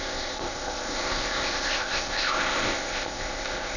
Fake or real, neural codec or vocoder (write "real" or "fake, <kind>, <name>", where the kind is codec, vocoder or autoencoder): fake, codec, ZipCodec